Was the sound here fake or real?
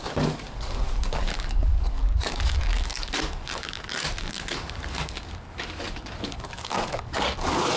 fake